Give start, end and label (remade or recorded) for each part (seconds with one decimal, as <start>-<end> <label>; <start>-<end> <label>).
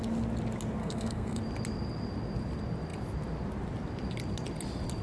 0.0-0.8 recorded; 0.8-1.4 remade; 1.4-5.0 recorded